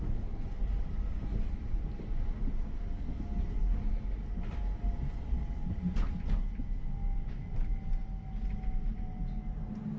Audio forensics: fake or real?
real